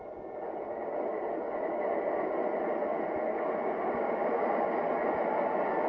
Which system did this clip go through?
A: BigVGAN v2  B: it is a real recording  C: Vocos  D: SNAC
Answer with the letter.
B